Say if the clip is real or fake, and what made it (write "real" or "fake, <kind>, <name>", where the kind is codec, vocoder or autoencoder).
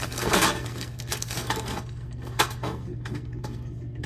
fake, codec, SNAC